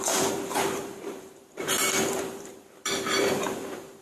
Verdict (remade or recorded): remade